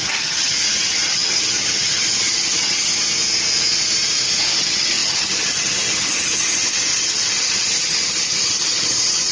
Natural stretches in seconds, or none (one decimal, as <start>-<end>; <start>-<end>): 2.9-4.6